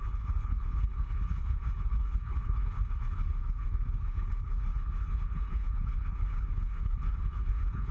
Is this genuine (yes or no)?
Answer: no